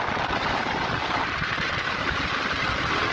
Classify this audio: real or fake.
real